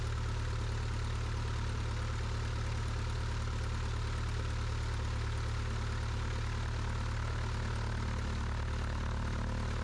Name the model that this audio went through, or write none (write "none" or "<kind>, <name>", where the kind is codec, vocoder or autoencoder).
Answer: none